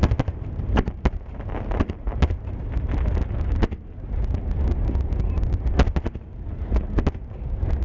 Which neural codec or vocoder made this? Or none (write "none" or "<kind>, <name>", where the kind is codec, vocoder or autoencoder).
none